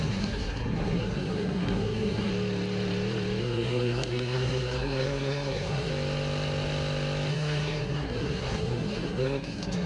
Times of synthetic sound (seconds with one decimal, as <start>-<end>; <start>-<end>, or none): 0.0-2.3; 3.4-5.9; 7.3-9.9